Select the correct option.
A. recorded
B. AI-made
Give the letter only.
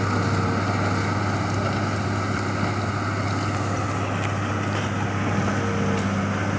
A